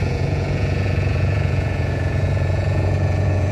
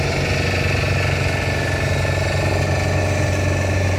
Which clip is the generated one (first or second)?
first